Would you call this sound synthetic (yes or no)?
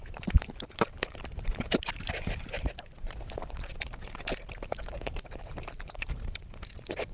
yes